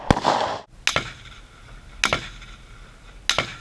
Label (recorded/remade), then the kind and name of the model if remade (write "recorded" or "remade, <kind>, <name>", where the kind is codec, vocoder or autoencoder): recorded